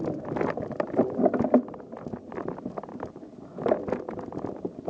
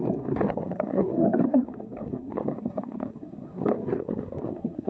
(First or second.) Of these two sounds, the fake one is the second